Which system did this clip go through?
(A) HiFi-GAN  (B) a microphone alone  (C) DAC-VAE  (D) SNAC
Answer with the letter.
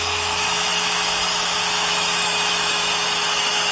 C